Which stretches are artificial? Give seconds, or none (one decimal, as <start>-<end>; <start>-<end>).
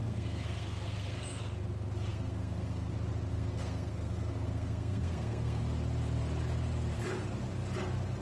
0.0-1.6; 2.1-2.9; 3.3-5.6